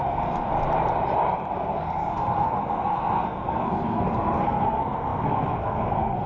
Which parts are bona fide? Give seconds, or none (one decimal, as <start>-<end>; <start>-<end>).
0.5-1.5